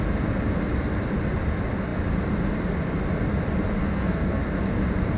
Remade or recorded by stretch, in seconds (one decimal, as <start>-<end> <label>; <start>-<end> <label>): 0.0-3.8 recorded; 3.8-4.4 remade; 4.4-5.2 recorded